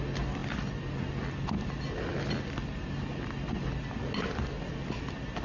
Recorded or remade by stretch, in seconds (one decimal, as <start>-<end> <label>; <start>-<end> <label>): 0.0-5.4 recorded